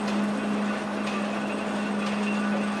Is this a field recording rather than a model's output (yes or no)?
yes